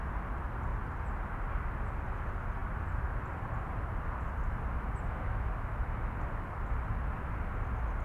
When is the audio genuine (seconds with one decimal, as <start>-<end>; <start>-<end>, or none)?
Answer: 0.0-8.0